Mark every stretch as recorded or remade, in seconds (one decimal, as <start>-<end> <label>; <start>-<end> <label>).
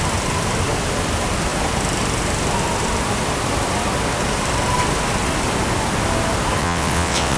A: 0.0-6.6 recorded; 6.6-7.4 remade